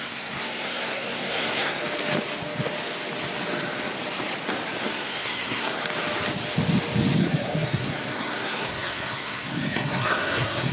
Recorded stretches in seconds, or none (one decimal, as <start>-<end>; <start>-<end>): 1.8-4.8; 5.8-7.2